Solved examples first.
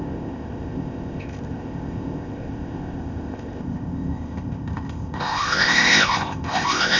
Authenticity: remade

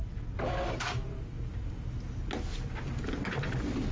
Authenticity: recorded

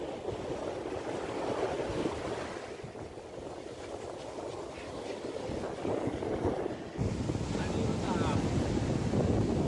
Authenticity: recorded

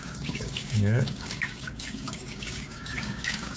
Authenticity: remade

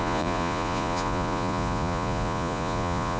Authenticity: remade